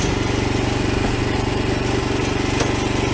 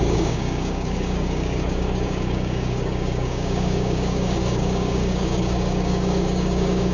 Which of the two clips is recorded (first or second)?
first